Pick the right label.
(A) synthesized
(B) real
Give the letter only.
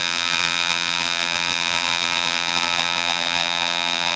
A